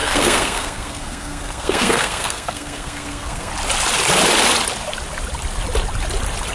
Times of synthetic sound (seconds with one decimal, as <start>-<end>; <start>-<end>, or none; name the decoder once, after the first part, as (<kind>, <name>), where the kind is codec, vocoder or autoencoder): 0.0-3.5 (codec, SNAC)